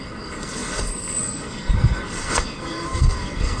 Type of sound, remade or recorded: remade